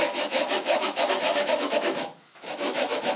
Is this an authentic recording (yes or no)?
no